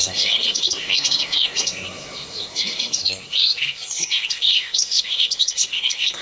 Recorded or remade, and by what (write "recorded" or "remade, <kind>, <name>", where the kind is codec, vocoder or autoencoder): remade, codec, SNAC